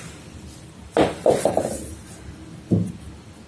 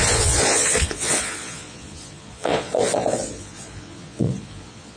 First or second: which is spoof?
second